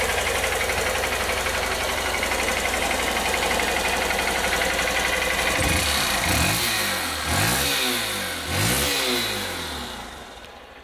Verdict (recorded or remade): recorded